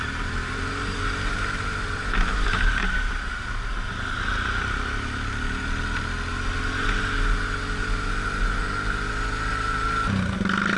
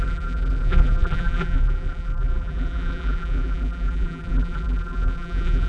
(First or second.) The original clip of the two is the first